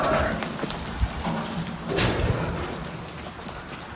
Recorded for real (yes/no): yes